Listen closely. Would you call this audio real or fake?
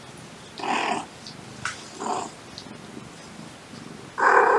real